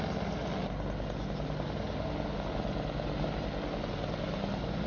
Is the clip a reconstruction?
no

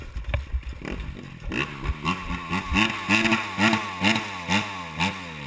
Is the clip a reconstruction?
no